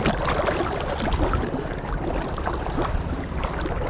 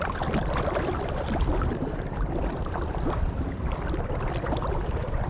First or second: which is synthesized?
second